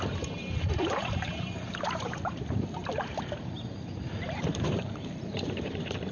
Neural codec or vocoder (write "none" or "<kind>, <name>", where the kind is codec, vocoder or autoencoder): vocoder, BigVGAN v2